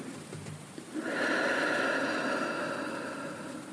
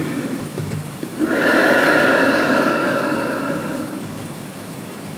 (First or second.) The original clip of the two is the first